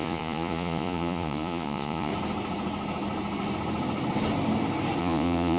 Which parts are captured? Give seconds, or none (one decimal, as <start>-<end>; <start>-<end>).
2.1-5.0